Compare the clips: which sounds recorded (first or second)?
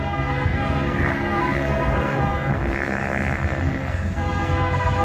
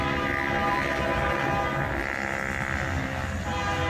second